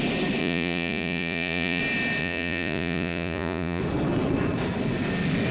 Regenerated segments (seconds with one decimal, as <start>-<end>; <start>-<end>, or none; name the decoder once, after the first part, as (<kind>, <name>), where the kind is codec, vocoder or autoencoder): 0.4-1.8 (vocoder, Vocos); 2.2-3.8